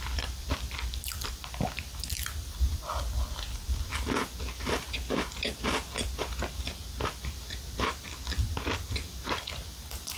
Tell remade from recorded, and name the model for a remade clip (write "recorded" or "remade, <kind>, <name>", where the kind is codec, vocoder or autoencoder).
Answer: remade, vocoder, BigVGAN v2